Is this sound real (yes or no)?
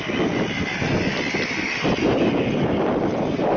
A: yes